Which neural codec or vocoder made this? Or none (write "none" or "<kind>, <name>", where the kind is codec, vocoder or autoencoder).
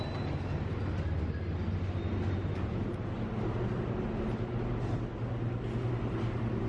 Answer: none